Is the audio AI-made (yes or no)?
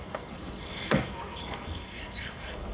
yes